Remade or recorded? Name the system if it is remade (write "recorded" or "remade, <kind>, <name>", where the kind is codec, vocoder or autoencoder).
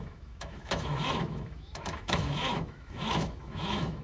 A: remade, autoencoder, DAC-VAE